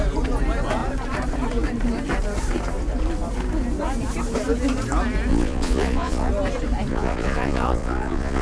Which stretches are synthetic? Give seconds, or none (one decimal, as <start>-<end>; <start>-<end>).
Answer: 5.3-6.3; 6.9-8.4